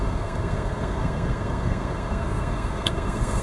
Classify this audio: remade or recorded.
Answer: remade